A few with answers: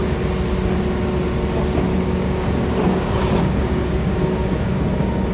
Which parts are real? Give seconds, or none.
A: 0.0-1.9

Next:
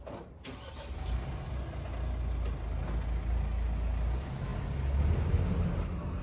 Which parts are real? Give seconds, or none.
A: 0.0-6.2

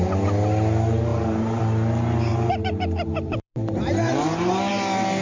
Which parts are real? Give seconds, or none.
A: 0.0-1.1; 1.6-2.3; 4.7-5.2